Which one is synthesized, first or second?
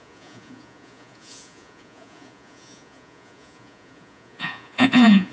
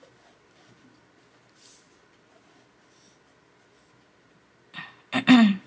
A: first